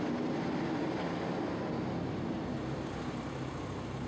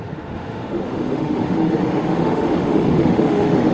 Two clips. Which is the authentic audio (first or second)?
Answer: first